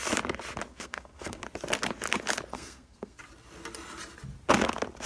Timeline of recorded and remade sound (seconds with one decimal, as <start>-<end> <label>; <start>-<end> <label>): 0.0-0.7 recorded; 0.7-1.4 remade; 1.4-2.5 recorded; 2.5-3.2 remade; 3.2-5.1 recorded